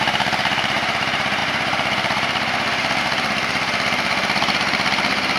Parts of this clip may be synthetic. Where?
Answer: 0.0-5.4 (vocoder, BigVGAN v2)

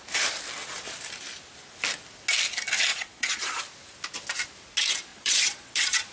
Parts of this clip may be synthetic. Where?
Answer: 2.9-3.6 (vocoder, Vocos); 5.1-6.1

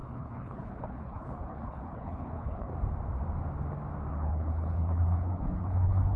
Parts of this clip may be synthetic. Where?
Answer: 0.0-2.7 (codec, HILCodec); 4.1-6.2